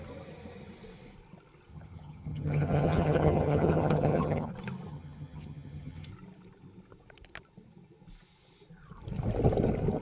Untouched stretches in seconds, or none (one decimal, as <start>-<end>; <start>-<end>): 0.0-1.7; 4.5-4.9; 6.1-10.0